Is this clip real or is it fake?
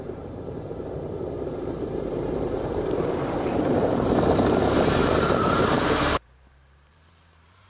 fake